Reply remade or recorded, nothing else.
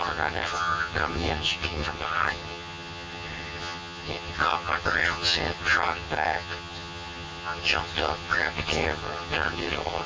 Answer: remade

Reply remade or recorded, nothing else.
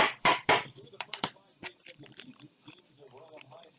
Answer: remade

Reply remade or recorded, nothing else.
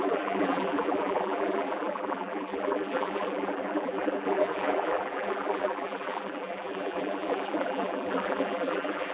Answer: remade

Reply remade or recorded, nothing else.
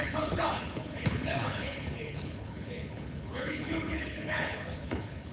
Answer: remade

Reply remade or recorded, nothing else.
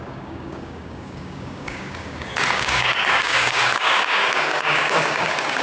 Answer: remade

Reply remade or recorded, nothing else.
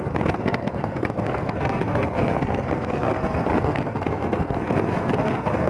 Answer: remade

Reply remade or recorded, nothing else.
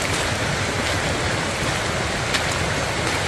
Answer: recorded